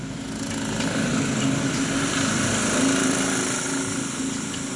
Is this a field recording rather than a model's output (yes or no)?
yes